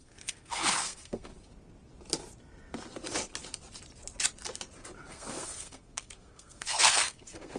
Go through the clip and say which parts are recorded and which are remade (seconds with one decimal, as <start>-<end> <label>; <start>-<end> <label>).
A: 0.0-1.3 remade; 1.3-5.1 recorded; 5.1-7.6 remade